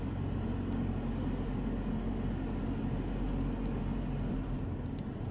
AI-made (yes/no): no